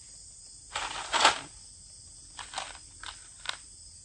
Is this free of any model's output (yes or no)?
yes